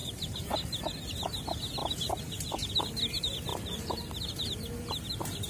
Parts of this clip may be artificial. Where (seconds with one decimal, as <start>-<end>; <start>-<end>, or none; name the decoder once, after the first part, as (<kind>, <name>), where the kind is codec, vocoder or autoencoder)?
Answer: 0.0-0.8 (vocoder, BigVGAN v2); 1.8-2.7; 3.5-4.5